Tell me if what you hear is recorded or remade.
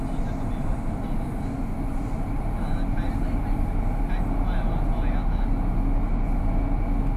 recorded